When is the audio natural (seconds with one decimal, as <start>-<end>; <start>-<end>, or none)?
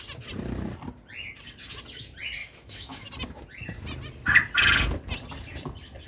0.0-2.4; 3.1-6.1